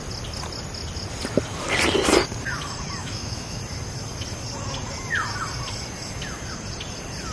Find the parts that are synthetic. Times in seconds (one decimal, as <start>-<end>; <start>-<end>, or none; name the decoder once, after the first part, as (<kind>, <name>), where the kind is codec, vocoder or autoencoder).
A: 3.0-3.6 (autoencoder, DAC-VAE)